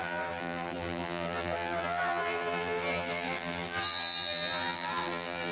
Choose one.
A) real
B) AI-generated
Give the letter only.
B